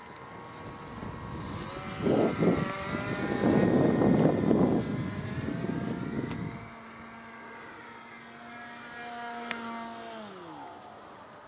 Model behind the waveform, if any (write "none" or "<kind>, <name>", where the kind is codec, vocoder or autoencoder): none